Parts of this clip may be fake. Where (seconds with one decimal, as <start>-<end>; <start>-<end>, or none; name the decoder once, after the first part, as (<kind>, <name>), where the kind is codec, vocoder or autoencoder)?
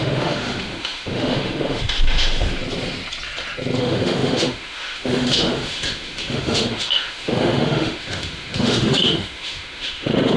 0.0-2.6 (autoencoder, DAC-VAE); 3.8-10.4